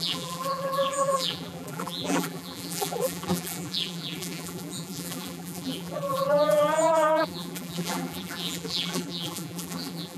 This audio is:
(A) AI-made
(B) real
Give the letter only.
A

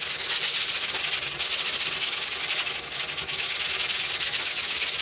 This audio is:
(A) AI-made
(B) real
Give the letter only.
B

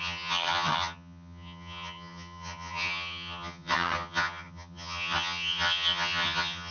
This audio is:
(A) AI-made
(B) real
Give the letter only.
A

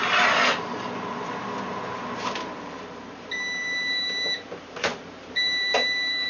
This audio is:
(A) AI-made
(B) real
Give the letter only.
A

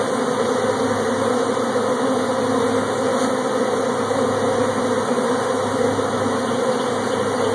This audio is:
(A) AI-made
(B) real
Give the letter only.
B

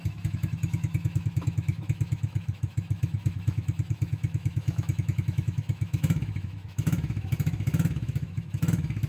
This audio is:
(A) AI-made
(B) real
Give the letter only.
A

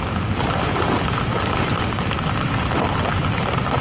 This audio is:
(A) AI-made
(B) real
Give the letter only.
B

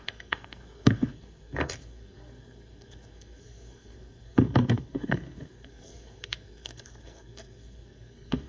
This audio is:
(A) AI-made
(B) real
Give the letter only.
A